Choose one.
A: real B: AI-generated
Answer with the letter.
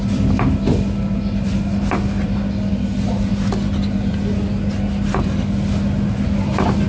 A